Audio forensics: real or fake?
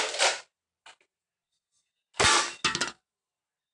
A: real